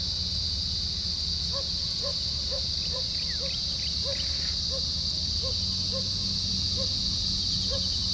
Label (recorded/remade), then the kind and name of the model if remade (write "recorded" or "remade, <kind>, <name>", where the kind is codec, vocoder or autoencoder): recorded